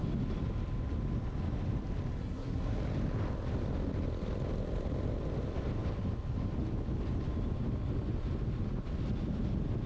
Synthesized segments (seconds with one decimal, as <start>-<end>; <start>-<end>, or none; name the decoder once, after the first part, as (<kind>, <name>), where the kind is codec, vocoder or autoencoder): 2.2-2.8 (codec, SNAC)